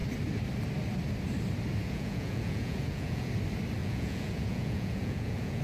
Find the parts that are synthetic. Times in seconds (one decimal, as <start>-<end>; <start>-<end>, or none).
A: 1.8-3.3; 3.8-5.6